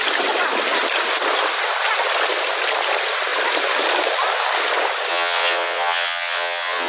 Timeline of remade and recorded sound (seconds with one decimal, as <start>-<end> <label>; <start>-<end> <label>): 0.0-5.1 recorded; 5.1-6.9 remade